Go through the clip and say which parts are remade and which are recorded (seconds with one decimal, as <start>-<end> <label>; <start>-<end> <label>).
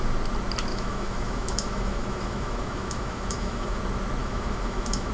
0.0-0.7 recorded; 0.7-3.8 remade; 3.8-4.2 recorded; 4.2-5.1 remade